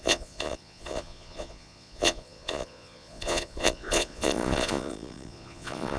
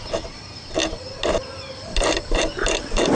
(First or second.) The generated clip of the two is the first